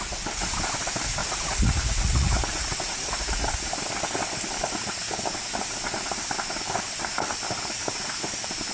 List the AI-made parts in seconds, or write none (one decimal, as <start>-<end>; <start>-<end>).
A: 1.2-3.5